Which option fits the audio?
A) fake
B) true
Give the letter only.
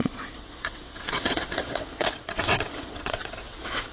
A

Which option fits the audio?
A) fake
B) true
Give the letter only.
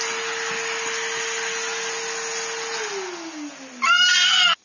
B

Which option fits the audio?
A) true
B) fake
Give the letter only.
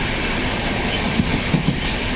A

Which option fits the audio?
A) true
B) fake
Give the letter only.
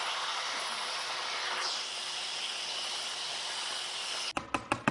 A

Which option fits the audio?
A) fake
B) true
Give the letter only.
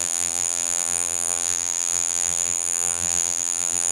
A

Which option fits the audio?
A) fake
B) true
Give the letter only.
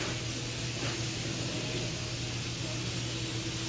B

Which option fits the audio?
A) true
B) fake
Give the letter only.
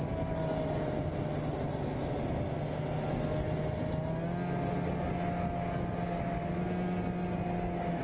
A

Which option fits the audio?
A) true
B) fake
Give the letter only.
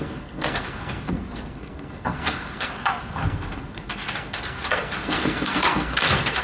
B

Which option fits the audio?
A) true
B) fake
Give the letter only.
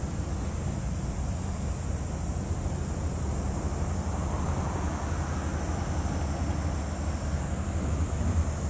A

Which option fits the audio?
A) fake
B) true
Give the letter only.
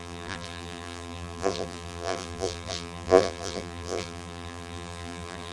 A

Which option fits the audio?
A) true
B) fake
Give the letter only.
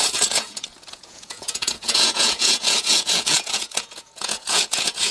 B